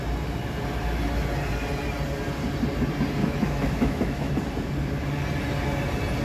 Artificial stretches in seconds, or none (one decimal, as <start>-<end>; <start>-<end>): 3.2-4.3